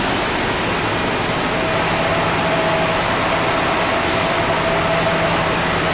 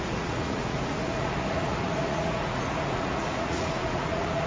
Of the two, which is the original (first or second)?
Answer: first